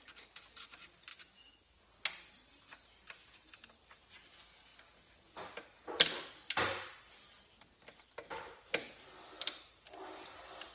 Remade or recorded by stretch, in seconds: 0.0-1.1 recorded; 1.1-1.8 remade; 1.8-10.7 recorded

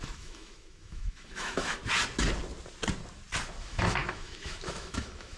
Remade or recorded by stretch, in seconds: 0.0-1.8 remade; 1.8-3.6 recorded; 3.6-5.4 remade